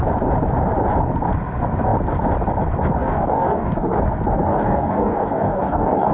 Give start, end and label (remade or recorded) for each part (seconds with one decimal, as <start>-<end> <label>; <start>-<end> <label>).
0.0-3.0 recorded; 3.0-4.0 remade; 4.0-4.5 recorded; 4.5-6.1 remade